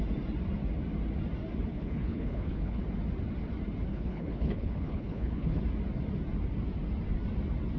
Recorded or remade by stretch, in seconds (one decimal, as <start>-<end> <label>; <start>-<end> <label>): 0.0-1.7 recorded; 1.7-2.8 remade; 2.8-3.9 recorded; 3.9-5.6 remade; 5.6-7.8 recorded